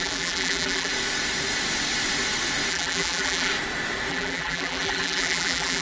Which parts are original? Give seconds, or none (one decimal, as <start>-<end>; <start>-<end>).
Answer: 0.9-2.7; 3.5-4.1